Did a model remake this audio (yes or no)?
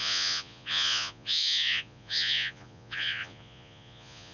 yes